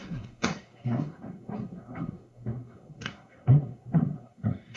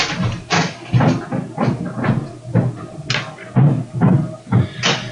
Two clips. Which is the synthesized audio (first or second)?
first